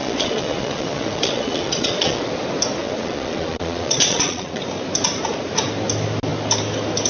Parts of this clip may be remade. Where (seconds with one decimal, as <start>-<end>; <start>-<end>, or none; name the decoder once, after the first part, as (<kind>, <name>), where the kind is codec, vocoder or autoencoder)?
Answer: 0.0-2.3 (vocoder, Vocos); 2.8-4.6